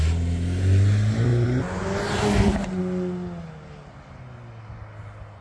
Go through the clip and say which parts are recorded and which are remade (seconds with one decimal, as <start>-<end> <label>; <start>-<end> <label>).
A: 0.0-5.4 recorded